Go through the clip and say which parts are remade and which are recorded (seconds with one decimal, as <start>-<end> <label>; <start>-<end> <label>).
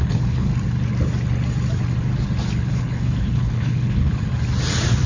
0.0-0.5 remade; 0.5-2.6 recorded; 2.6-4.1 remade; 4.1-5.1 recorded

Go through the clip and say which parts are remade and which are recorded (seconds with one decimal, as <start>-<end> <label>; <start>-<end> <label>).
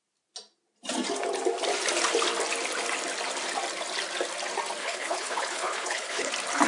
0.0-4.8 recorded; 4.8-6.3 remade; 6.3-6.7 recorded